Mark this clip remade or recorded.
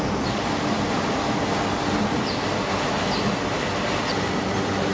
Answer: recorded